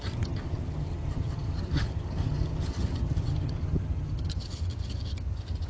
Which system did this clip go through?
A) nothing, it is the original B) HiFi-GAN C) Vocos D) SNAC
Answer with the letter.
B